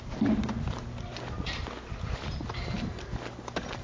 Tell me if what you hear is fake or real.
real